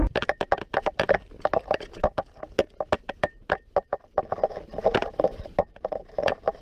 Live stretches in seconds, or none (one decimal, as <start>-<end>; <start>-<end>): 2.5-3.2; 3.9-5.1